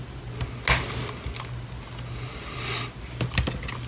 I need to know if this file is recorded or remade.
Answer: recorded